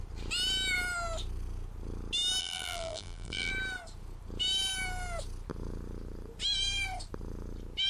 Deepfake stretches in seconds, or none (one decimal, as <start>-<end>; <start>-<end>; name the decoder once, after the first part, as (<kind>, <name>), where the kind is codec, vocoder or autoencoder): 2.4-3.5 (vocoder, BigVGAN v2)